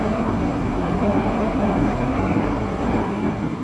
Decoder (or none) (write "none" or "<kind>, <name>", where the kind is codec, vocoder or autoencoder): codec, SNAC